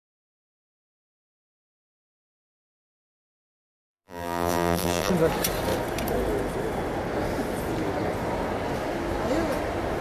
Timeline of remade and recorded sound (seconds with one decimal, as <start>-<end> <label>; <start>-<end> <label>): 0.0-2.0 recorded; 2.0-5.1 remade; 5.1-10.0 recorded